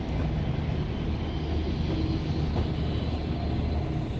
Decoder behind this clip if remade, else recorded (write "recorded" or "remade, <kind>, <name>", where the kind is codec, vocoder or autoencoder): recorded